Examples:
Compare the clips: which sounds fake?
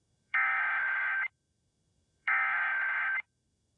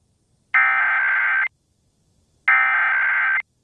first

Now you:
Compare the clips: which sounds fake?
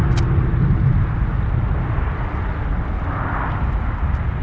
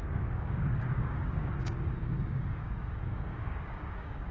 second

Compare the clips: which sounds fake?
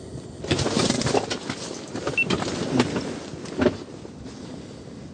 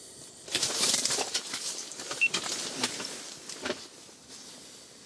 second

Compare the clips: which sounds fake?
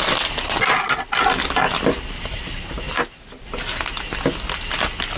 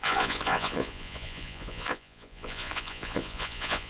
second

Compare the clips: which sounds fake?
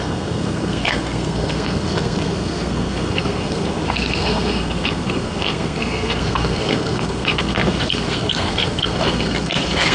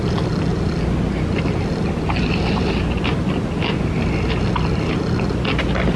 first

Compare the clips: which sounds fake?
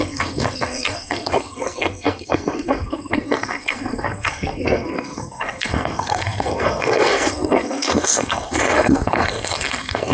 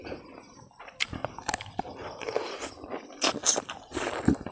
first